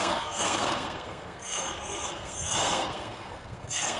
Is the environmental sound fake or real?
fake